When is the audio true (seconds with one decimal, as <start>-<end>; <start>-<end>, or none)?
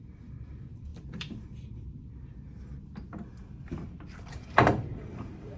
0.9-4.3